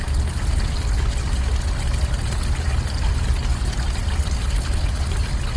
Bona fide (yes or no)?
yes